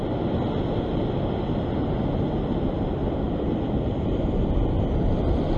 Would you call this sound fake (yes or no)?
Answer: no